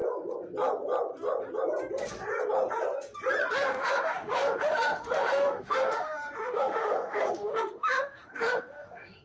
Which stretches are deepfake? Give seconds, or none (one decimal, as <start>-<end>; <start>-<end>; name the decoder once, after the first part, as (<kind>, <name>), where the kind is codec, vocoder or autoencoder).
3.5-9.2 (autoencoder, DAC-VAE)